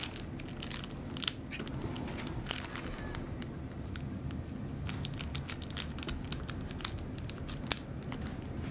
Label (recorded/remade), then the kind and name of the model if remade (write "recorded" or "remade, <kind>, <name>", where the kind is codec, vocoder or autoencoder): recorded